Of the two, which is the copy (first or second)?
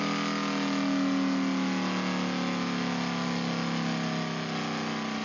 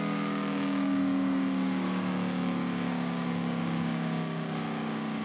second